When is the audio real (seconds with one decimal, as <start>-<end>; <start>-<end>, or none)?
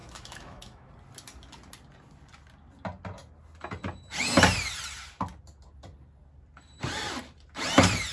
0.9-8.1